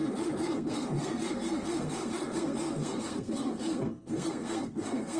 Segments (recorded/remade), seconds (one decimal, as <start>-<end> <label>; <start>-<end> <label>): 0.0-5.2 remade